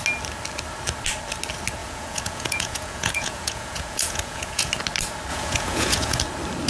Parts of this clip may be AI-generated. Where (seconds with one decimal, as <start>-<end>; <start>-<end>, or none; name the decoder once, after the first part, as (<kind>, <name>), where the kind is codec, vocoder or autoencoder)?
1.8-4.7 (vocoder, Vocos); 5.3-6.2